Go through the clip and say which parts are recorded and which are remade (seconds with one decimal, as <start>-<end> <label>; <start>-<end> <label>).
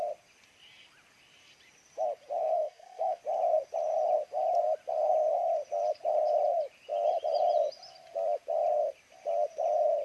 0.0-2.4 recorded; 2.4-3.2 remade; 3.2-10.0 recorded